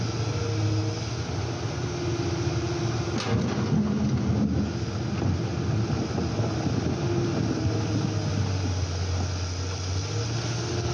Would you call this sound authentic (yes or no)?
yes